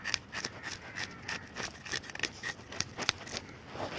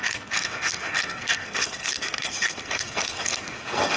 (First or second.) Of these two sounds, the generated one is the second